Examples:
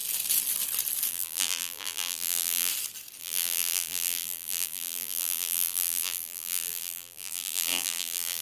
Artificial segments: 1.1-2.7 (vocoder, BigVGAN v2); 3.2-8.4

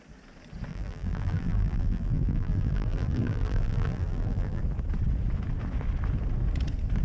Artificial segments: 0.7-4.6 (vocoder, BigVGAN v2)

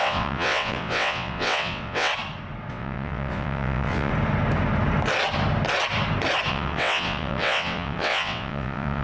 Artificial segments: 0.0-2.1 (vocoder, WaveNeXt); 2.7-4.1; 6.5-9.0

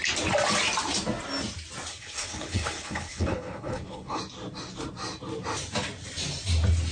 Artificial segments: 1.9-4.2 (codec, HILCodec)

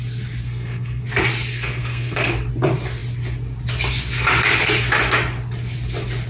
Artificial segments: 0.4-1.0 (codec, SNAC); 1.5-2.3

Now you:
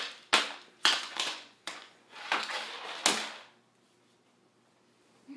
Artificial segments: 0.8-2.6 (vocoder, Vocos)